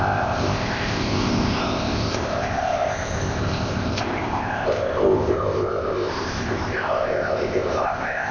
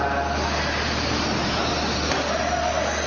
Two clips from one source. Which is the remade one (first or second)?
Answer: first